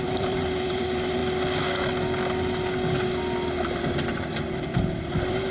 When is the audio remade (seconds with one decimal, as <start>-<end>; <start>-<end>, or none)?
0.0-1.2; 3.6-5.5